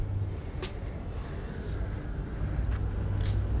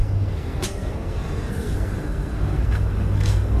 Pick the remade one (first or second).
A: second